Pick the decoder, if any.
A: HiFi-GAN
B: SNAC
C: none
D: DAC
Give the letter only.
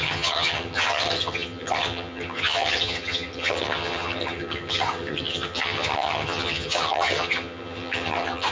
A